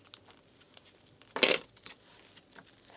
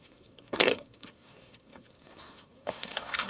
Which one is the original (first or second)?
first